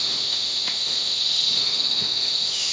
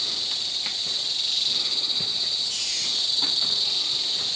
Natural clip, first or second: second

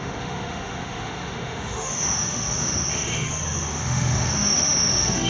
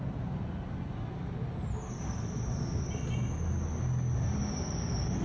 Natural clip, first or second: second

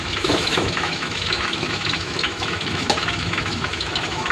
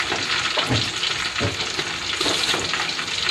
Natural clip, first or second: second